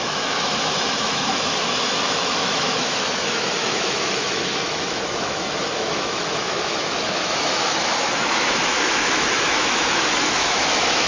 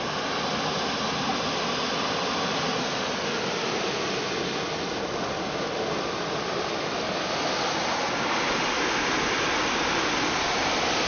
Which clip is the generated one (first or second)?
first